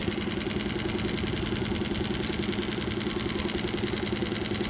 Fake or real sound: real